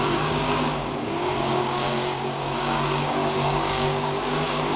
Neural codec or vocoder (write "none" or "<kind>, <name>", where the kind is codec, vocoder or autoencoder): codec, DAC